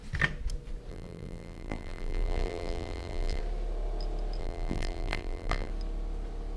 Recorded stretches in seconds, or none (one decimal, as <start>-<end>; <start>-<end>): 0.0-0.9; 3.4-4.4; 5.7-6.6